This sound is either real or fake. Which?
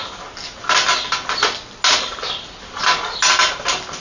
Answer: real